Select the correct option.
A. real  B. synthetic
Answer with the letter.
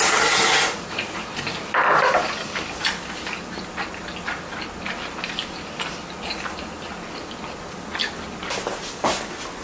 A